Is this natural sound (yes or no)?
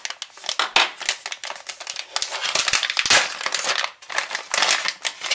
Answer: yes